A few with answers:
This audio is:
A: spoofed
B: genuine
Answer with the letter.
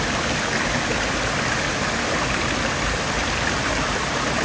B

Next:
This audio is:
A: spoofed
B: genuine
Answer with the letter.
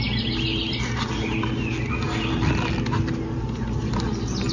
B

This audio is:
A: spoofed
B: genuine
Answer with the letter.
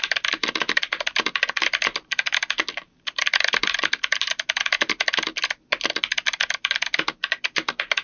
B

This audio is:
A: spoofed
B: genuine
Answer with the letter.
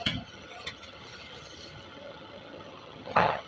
A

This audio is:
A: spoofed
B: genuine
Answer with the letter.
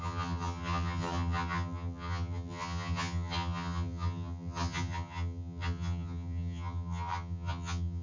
A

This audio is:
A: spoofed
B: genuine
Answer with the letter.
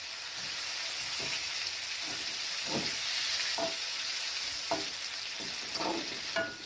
B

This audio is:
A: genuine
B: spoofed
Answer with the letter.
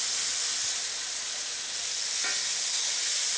A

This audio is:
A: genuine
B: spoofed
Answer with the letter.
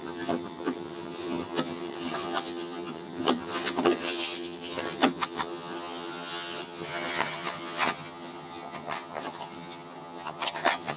B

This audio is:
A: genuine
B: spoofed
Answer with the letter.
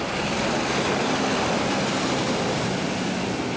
A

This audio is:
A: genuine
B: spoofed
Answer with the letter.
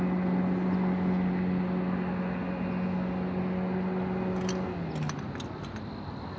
A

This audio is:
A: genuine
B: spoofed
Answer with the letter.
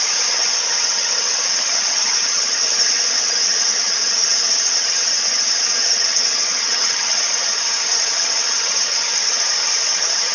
B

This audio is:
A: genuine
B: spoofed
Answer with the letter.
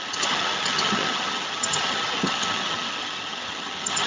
B